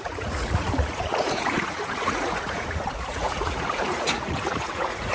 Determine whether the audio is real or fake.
fake